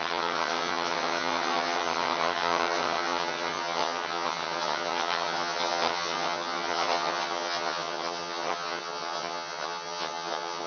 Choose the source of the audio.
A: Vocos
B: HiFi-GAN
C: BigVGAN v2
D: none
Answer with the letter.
B